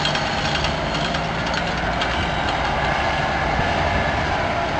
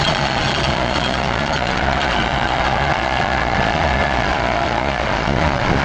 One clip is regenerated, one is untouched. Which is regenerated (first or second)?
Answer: second